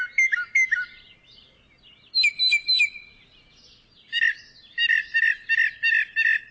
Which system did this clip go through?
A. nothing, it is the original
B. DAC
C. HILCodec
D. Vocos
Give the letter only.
A